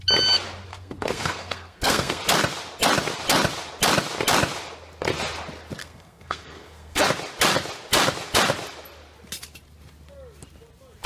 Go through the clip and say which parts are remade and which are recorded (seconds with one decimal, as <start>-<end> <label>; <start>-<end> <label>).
0.0-0.7 recorded; 0.7-2.2 remade; 2.2-5.8 recorded; 5.8-7.1 remade; 7.1-11.1 recorded